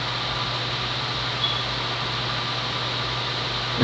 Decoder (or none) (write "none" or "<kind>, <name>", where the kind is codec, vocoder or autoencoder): none